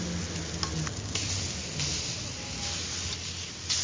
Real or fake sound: real